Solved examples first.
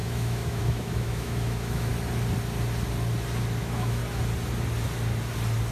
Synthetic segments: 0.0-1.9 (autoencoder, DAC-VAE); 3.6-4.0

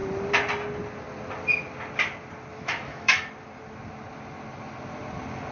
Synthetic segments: 2.5-3.3 (autoencoder, DAC-VAE)

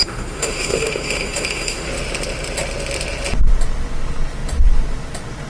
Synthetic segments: 0.0-1.9 (autoencoder, DAC-VAE)

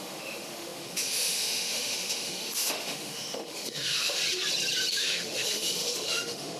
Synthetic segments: 0.0-4.2 (autoencoder, DAC-VAE); 4.9-6.6

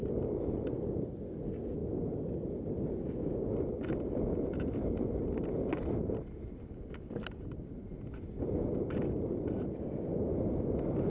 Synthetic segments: none

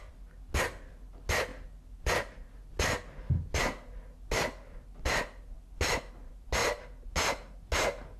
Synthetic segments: none

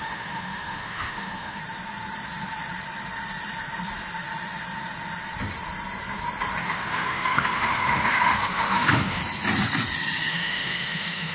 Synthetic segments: 0.0-1.6 (autoencoder, DAC-VAE); 6.6-9.2; 10.3-11.3

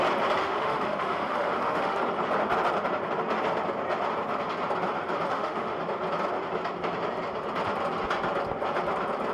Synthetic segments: 0.4-2.0 (autoencoder, DAC-VAE); 5.3-5.8